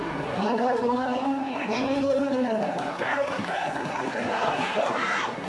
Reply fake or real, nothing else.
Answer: fake